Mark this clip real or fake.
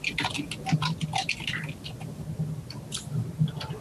real